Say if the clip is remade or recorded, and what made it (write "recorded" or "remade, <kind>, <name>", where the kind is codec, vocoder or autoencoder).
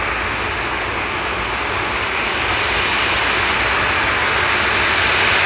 recorded